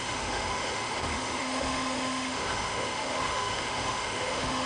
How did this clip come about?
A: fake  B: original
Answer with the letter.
A